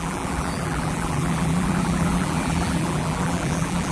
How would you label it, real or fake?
fake